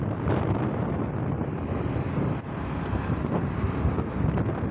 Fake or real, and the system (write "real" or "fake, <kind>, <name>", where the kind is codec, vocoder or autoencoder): real